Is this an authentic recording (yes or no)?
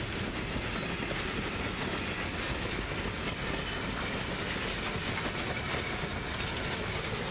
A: yes